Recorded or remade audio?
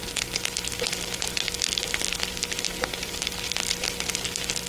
recorded